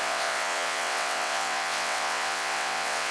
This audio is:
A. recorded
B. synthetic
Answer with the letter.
B